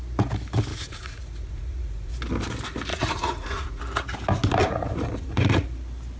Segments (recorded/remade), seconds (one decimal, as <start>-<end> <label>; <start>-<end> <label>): 0.0-0.7 recorded; 0.7-2.1 remade; 2.1-2.9 recorded; 2.9-3.8 remade; 3.8-4.6 recorded; 4.6-5.6 remade; 5.6-6.2 recorded